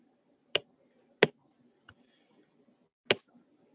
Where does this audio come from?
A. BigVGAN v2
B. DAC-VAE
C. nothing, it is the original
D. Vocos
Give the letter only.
C